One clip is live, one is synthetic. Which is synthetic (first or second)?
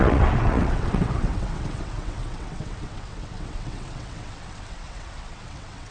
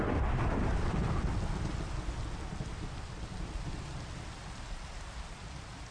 first